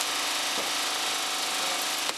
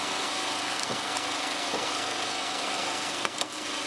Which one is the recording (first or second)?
first